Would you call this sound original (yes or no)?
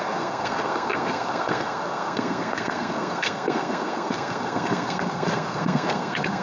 no